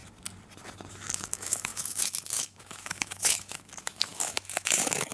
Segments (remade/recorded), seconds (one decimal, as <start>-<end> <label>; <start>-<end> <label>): 0.0-0.9 recorded; 0.9-5.1 remade